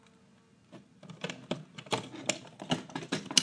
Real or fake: real